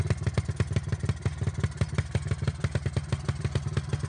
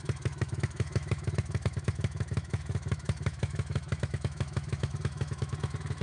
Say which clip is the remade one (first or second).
second